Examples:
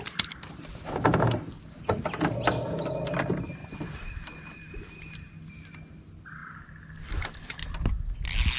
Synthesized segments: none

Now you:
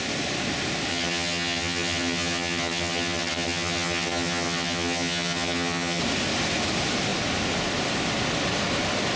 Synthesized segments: 0.9-6.0 (vocoder, HiFi-GAN)